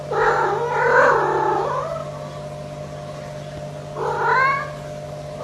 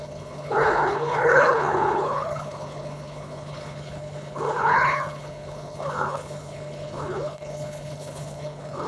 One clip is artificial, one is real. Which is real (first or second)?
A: first